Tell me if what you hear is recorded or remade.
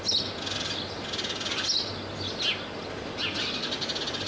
recorded